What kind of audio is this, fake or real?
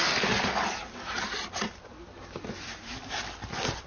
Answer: real